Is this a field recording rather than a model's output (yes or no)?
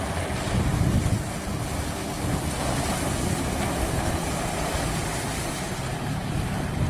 yes